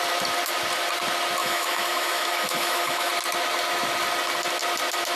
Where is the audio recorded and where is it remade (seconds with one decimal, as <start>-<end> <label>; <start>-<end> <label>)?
0.0-1.4 recorded; 1.4-3.1 remade; 3.1-5.2 recorded